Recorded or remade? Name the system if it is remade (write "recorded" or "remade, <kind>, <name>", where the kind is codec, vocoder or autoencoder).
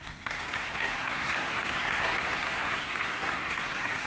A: remade, codec, SNAC